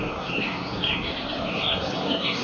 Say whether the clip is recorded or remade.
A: remade